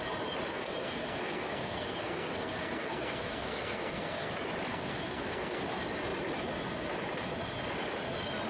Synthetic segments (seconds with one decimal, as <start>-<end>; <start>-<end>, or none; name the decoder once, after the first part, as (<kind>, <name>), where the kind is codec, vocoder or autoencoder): 0.5-4.3 (codec, SNAC); 4.7-5.6